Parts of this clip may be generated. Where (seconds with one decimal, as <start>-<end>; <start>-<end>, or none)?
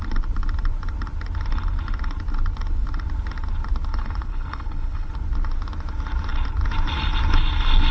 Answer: 3.9-5.1